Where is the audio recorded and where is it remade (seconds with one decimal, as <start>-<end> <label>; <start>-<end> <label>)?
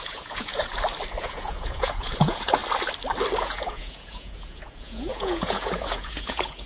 0.0-0.7 remade; 0.7-1.2 recorded; 1.2-2.6 remade; 2.6-3.4 recorded; 3.4-6.7 remade